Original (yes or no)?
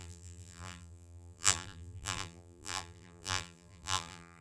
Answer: no